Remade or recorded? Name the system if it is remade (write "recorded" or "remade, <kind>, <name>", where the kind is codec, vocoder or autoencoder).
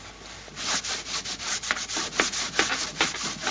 recorded